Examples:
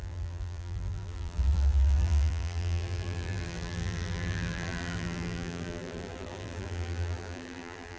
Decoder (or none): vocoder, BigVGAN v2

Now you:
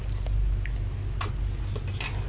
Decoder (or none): none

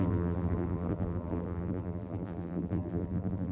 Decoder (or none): vocoder, BigVGAN v2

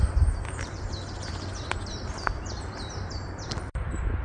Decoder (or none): vocoder, BigVGAN v2